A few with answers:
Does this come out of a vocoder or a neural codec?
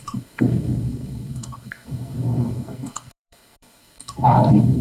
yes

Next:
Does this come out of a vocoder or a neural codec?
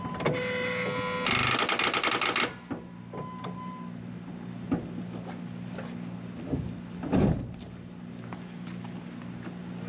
no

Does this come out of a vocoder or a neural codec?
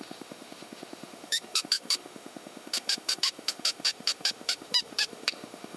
yes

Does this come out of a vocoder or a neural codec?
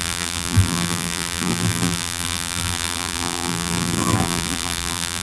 yes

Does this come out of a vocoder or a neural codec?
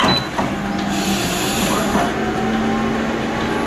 no